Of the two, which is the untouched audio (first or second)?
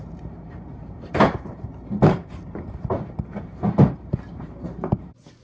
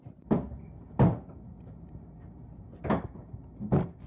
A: second